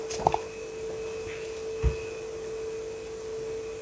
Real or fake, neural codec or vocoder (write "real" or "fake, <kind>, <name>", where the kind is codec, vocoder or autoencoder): real